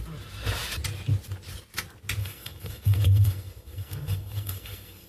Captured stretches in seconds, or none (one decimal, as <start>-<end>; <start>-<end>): 0.0-2.2